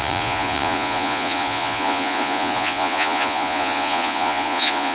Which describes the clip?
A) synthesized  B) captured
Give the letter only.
A